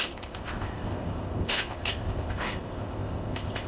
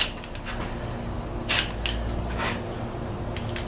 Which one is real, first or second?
second